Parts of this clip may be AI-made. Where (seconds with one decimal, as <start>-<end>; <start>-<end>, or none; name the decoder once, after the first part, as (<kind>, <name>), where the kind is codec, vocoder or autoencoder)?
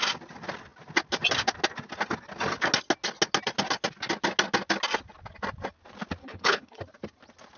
6.2-6.8 (codec, HILCodec)